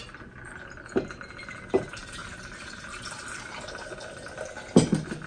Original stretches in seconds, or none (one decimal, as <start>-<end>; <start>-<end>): 0.0-5.3